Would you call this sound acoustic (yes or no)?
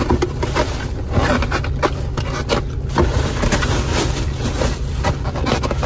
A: yes